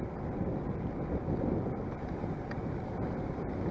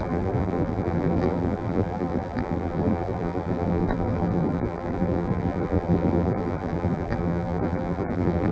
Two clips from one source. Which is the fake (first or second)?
second